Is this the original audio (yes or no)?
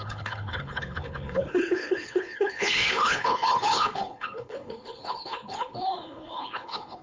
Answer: no